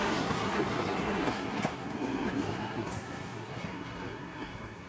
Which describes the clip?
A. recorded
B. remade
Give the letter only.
B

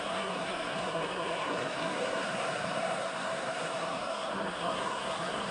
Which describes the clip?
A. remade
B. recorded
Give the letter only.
A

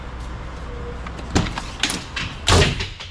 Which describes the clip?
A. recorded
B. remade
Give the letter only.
A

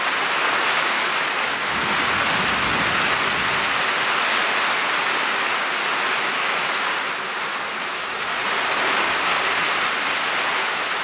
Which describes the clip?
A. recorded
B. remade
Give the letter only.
A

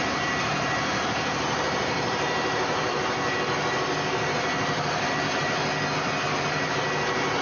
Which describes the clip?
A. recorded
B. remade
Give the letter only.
B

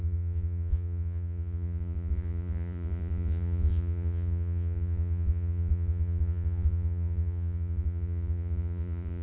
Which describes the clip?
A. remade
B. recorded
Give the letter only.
A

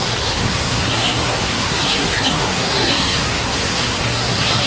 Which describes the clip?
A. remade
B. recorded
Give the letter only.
A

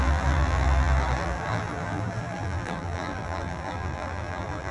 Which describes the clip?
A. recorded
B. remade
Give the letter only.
B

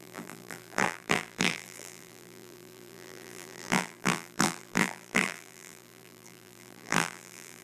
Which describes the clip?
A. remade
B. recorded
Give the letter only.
A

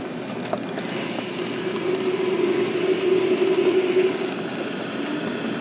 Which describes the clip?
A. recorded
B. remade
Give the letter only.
A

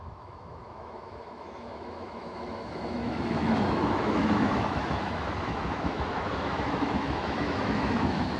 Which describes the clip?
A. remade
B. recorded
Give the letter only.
A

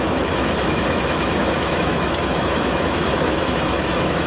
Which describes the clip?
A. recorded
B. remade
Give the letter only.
B